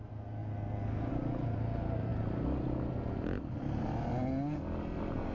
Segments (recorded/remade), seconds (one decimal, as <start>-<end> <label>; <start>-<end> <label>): 0.0-5.3 recorded